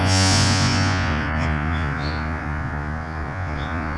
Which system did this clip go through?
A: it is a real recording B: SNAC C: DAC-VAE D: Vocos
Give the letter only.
D